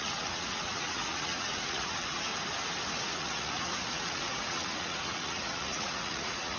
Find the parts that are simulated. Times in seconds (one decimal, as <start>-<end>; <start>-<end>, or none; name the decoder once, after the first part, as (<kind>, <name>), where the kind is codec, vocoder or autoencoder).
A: 0.0-2.3 (vocoder, Vocos); 2.9-6.6